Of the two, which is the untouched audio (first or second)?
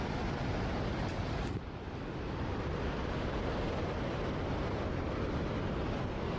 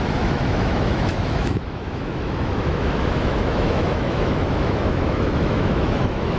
first